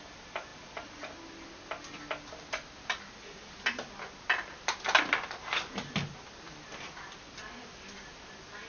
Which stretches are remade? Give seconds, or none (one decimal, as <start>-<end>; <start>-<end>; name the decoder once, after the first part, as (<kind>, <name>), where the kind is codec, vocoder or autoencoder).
none